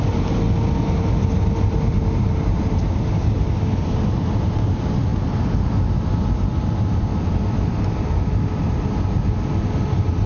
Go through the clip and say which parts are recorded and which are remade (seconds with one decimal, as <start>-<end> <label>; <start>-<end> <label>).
0.0-10.3 recorded